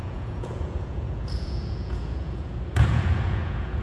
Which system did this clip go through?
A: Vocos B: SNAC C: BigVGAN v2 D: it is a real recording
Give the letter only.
A